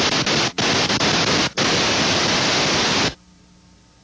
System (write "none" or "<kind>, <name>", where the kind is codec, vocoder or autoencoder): none